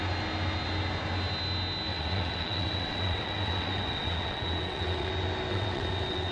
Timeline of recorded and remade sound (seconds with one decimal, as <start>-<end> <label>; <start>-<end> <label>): 0.0-1.9 recorded; 1.9-5.1 remade; 5.1-5.5 recorded; 5.5-6.3 remade